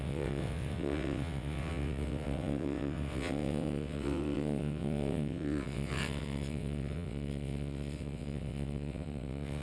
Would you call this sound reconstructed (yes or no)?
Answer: yes